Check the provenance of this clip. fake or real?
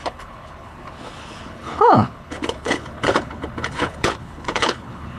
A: fake